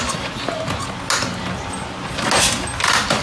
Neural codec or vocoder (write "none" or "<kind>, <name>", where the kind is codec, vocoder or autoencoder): none